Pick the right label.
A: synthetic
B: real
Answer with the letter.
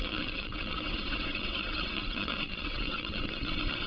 A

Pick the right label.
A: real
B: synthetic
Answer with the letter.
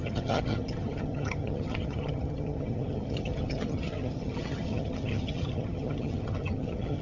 B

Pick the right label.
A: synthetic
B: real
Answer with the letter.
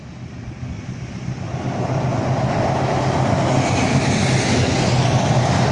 B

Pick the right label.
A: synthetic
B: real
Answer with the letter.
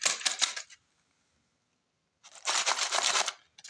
B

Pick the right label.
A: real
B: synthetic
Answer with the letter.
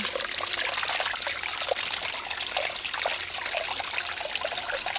A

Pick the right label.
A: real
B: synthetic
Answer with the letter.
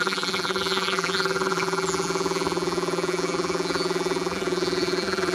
B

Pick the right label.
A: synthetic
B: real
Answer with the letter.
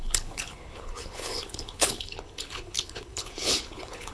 A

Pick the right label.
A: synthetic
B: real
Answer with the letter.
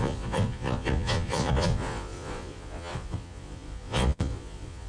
A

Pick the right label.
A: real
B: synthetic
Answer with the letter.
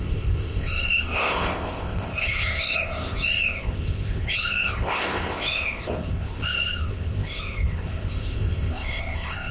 B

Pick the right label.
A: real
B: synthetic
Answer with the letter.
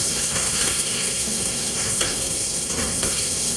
B